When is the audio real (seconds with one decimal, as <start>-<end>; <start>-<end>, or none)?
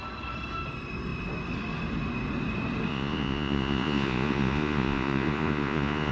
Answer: 0.0-2.9